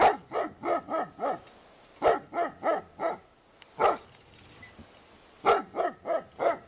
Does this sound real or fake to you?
real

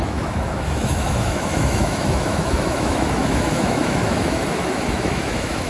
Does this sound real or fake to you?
fake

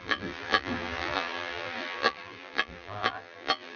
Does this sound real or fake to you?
fake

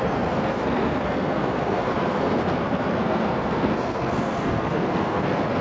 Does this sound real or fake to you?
fake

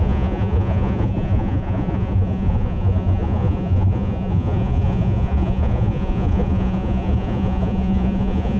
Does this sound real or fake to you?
fake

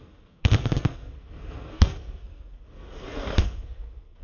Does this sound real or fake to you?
fake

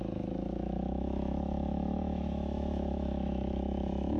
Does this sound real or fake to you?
fake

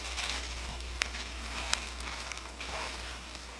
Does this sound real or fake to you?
fake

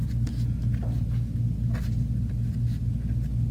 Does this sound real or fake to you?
real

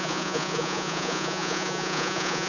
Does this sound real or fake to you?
fake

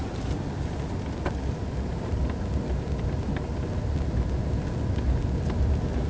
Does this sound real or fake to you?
real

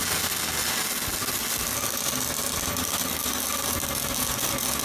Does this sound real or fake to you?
real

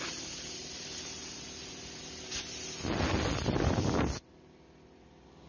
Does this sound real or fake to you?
real